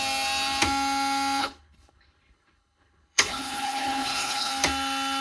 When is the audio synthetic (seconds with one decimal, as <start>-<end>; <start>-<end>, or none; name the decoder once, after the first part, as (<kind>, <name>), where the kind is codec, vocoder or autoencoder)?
1.4-4.5 (codec, HILCodec)